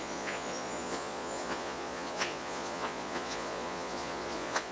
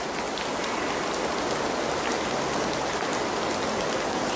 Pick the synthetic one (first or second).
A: first